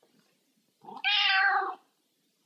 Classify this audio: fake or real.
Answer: real